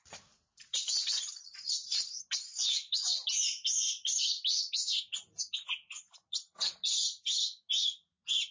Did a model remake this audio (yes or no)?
no